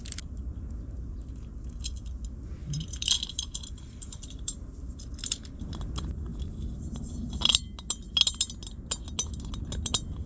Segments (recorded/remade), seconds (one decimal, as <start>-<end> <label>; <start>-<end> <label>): 0.0-2.6 recorded; 2.6-5.1 remade; 5.1-6.3 recorded; 6.3-7.1 remade; 7.1-10.3 recorded